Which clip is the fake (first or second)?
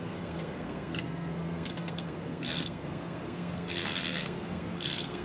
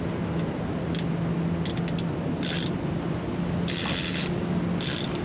first